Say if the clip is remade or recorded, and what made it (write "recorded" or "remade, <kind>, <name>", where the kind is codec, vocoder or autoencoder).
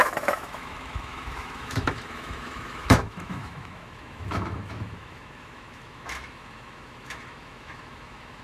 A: remade, autoencoder, DAC-VAE